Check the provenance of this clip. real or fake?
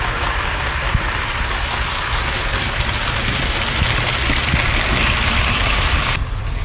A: real